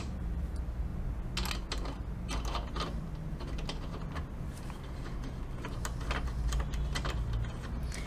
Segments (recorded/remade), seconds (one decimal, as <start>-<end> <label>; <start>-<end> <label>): 0.0-8.1 recorded

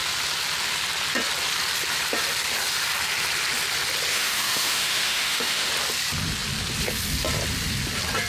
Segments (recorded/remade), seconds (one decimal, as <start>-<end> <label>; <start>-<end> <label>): 0.0-4.1 recorded; 4.1-5.7 remade; 5.7-8.3 recorded

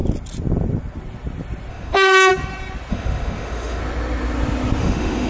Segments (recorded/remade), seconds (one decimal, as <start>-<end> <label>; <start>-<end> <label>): 0.0-1.7 recorded; 1.7-2.3 remade; 2.3-2.9 recorded; 2.9-3.8 remade; 3.8-4.8 recorded; 4.8-5.3 remade